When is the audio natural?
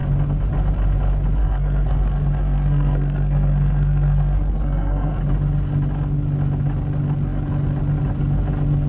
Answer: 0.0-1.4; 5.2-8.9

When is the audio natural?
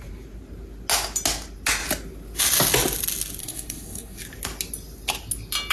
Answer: 0.0-3.4; 4.2-5.7